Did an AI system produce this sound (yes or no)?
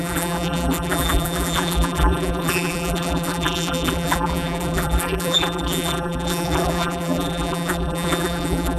yes